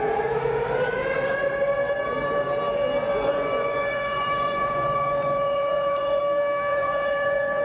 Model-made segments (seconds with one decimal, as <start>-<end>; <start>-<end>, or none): 3.1-6.2; 6.7-7.6